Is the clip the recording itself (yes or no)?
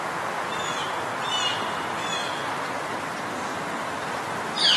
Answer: yes